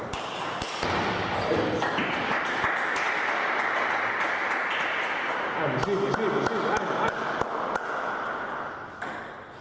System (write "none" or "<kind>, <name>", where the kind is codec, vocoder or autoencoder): none